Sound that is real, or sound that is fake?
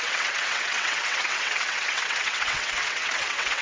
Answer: fake